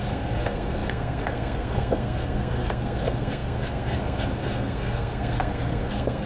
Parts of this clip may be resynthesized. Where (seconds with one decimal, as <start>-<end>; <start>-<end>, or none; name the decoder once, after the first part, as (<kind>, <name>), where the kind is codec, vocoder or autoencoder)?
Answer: 0.0-6.3 (codec, SNAC)